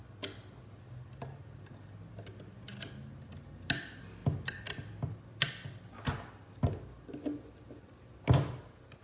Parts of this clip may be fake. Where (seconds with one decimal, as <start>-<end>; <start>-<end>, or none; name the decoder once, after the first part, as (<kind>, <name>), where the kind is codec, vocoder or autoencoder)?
none